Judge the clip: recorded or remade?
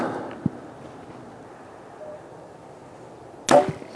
recorded